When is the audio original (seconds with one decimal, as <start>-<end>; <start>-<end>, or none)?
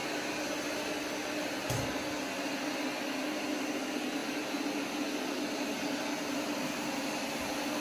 0.0-7.8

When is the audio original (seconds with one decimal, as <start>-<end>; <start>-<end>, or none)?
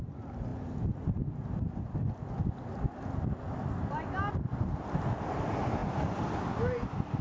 0.0-7.2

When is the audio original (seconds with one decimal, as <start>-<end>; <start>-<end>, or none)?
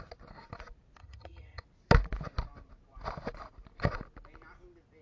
0.0-1.0; 1.6-5.0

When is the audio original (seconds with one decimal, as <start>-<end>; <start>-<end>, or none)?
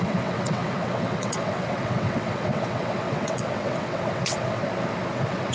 4.6-5.1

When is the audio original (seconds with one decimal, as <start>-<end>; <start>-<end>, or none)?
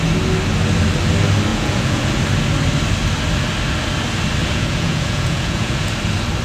0.0-1.5; 2.2-4.4; 5.9-6.4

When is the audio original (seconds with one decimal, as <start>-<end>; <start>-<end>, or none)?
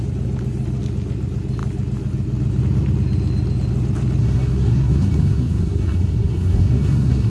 0.0-4.2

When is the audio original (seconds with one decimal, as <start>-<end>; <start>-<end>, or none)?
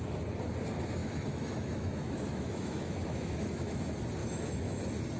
0.0-1.0; 3.8-4.2; 4.8-5.2